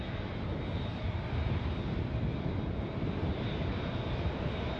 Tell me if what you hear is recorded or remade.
recorded